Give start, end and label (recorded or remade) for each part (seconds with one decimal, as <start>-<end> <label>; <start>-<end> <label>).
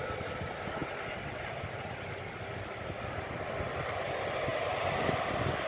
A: 0.0-5.7 recorded